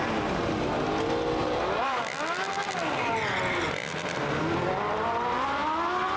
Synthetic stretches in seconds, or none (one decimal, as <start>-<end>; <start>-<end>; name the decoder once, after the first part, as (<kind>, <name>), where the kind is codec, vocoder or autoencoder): 1.4-2.0 (vocoder, BigVGAN v2)